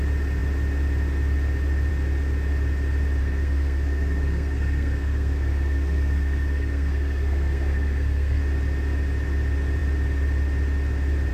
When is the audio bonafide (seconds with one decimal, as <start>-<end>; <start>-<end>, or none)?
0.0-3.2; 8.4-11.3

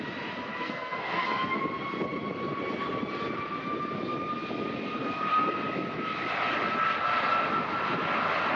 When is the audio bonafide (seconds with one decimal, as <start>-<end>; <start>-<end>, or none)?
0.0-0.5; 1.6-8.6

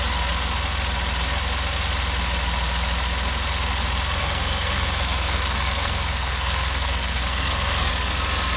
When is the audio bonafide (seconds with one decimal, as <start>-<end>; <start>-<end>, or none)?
0.0-4.2; 7.9-8.6

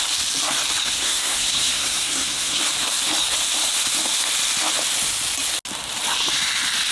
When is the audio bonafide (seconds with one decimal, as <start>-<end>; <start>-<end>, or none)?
0.0-0.8; 2.6-6.9

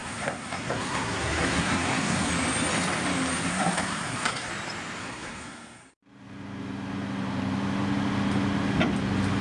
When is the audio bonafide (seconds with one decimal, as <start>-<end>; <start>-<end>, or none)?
2.3-3.5; 4.5-5.0; 6.0-9.4

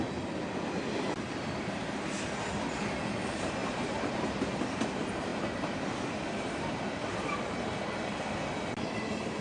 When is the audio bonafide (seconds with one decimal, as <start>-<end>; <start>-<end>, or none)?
0.0-9.4

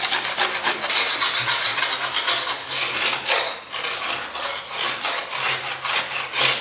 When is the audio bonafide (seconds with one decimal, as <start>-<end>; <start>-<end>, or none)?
0.0-6.6

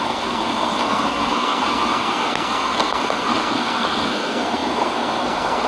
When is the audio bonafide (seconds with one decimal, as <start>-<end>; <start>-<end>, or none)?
none